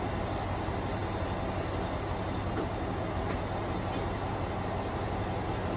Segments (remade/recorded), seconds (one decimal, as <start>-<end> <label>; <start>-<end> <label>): 0.0-5.8 recorded

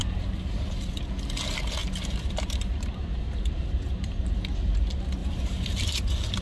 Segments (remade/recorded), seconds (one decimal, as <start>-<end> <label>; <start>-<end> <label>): 0.0-0.9 remade; 0.9-1.8 recorded; 1.8-4.8 remade; 4.8-5.2 recorded; 5.2-5.7 remade; 5.7-6.4 recorded

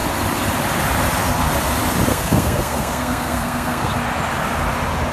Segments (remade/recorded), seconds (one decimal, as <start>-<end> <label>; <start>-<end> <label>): 0.0-2.1 recorded; 2.1-3.9 remade; 3.9-5.1 recorded